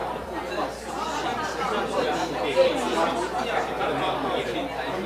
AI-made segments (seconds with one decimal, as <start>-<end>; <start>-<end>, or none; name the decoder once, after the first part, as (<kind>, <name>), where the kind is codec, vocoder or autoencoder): none

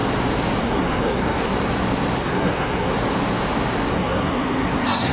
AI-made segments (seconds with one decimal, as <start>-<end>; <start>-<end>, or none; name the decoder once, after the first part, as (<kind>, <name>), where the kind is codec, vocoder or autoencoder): 0.6-1.5 (codec, SNAC); 2.2-2.9; 3.9-5.1